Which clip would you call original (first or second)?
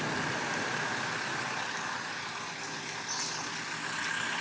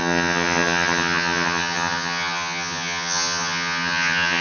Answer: first